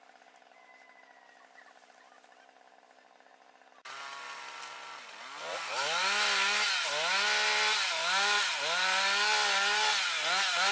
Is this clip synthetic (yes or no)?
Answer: yes